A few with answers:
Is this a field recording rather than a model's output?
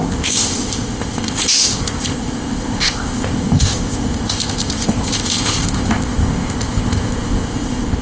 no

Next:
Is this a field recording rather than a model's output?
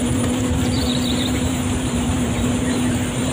no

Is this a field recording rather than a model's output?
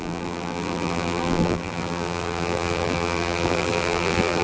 no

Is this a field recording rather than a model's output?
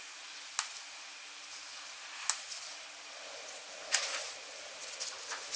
yes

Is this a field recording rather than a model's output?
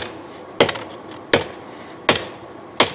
yes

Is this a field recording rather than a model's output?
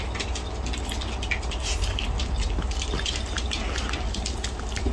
yes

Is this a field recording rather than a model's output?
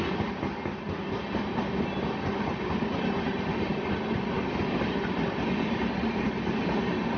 yes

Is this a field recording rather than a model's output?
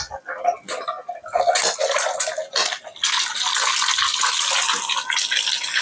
yes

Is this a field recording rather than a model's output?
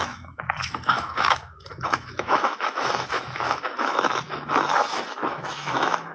no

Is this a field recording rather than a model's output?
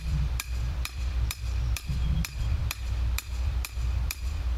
no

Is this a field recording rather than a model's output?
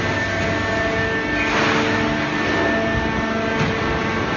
yes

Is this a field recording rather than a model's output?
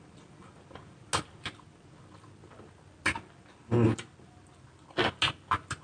yes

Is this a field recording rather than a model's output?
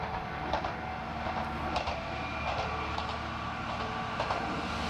yes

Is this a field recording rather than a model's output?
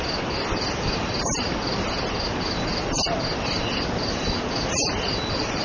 yes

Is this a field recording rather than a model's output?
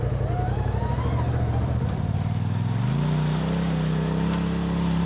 yes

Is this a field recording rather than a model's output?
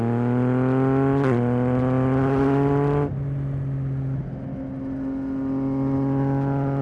yes